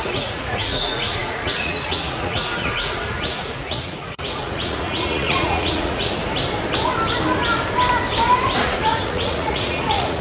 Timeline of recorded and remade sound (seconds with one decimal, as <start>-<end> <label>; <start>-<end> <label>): 0.0-6.2 remade; 6.2-8.6 recorded; 8.6-10.2 remade